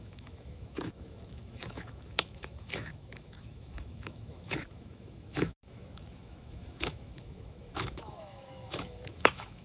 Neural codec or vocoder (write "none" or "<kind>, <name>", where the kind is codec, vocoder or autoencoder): autoencoder, DAC-VAE